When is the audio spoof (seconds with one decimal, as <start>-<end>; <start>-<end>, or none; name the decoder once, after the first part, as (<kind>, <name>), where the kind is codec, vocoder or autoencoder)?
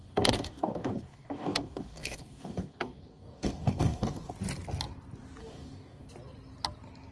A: 0.0-4.3 (codec, DAC); 5.4-6.1